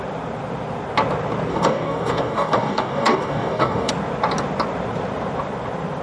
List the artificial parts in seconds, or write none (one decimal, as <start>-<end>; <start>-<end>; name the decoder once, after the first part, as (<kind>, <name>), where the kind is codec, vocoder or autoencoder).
1.5-3.9 (codec, DAC)